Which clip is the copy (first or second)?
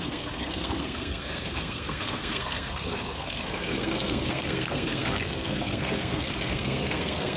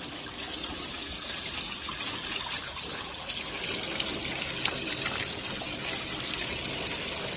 first